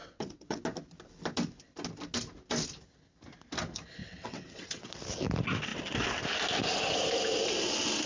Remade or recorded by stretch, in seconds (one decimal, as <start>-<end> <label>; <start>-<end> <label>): 0.0-0.6 remade; 0.6-4.0 recorded; 4.0-4.9 remade; 4.9-8.1 recorded